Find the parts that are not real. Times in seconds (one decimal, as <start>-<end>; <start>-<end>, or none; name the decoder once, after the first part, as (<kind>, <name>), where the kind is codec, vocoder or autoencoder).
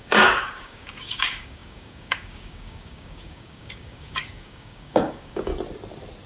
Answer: 0.0-5.5 (codec, DAC)